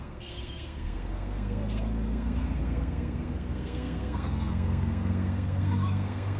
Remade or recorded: remade